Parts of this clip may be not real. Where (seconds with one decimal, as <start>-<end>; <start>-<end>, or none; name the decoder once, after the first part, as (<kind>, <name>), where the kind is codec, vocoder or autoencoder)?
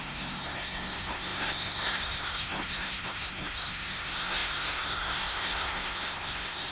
0.0-6.7 (codec, SNAC)